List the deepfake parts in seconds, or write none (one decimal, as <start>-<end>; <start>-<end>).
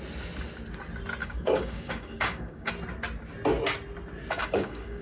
1.2-2.7; 4.4-5.0